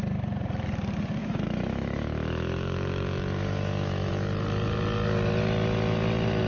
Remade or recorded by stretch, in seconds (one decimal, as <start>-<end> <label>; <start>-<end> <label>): 0.0-1.2 recorded; 1.2-4.1 remade; 4.1-6.5 recorded